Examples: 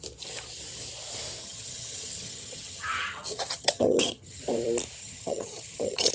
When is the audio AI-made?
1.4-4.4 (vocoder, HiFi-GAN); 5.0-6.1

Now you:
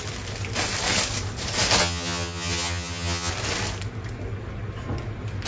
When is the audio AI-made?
1.8-3.3 (vocoder, HiFi-GAN)

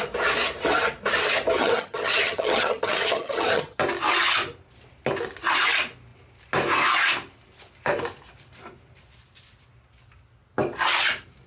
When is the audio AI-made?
1.6-3.8 (vocoder, HiFi-GAN)